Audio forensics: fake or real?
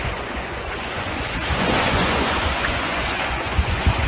fake